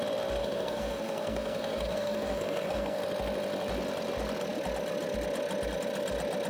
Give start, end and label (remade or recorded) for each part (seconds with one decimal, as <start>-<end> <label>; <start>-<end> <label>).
0.0-0.4 recorded; 0.4-3.0 remade; 3.0-6.5 recorded